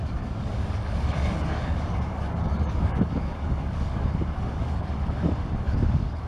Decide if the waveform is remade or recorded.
remade